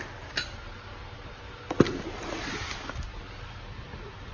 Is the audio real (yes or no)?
yes